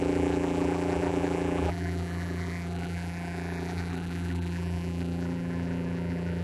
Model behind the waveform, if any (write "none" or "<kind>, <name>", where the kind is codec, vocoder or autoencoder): vocoder, BigVGAN v2